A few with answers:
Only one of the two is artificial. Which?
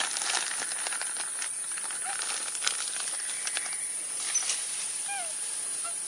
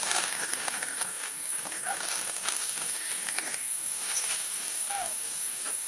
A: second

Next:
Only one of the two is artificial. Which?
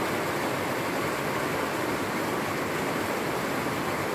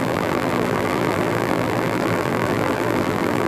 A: second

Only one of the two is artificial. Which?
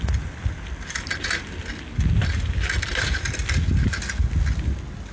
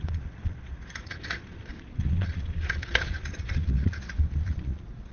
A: second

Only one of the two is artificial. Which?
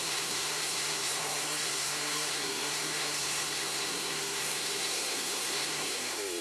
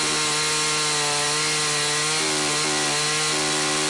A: first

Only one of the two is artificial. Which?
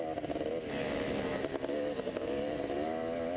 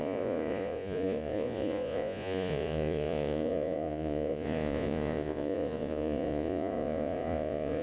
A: second